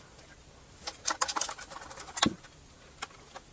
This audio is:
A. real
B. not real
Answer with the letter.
A